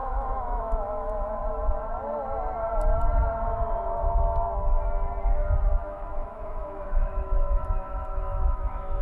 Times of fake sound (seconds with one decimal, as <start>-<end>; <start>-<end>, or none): 0.0-1.4; 5.7-9.0